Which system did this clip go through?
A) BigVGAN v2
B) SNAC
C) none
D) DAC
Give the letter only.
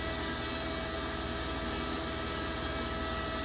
C